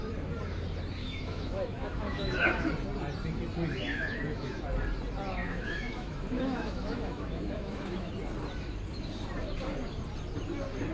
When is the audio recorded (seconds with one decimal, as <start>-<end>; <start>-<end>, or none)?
0.0-1.0; 2.7-3.9; 4.6-5.4; 8.1-10.9